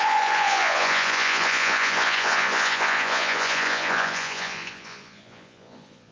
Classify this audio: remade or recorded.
remade